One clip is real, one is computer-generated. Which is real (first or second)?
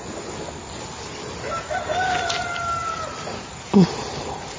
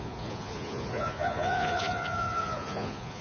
first